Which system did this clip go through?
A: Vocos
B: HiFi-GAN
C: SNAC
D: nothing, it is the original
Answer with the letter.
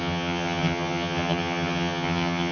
B